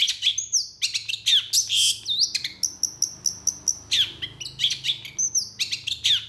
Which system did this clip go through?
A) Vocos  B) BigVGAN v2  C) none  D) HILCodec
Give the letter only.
C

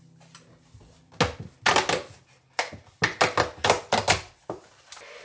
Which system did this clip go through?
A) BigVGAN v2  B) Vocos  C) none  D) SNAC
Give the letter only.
C